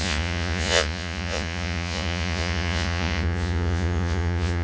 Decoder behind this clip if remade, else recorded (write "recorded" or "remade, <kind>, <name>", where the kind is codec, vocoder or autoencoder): remade, vocoder, Vocos